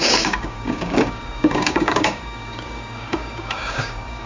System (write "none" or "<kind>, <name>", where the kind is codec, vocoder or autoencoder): codec, DAC